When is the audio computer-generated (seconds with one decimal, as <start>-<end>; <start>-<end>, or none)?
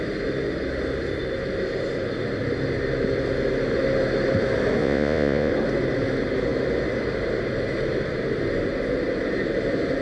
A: 4.8-5.5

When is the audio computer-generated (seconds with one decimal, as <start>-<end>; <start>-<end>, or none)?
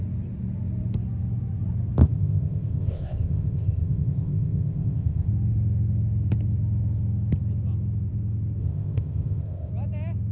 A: 2.0-5.3; 8.6-9.7